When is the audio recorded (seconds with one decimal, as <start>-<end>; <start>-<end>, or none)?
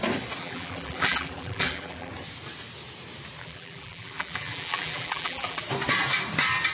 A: 0.0-0.4; 2.1-3.4; 5.6-6.7